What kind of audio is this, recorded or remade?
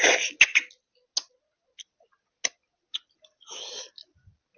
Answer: recorded